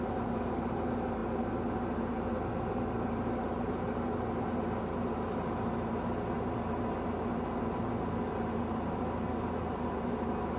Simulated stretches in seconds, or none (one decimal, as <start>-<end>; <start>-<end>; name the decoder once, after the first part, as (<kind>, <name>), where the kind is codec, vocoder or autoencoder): none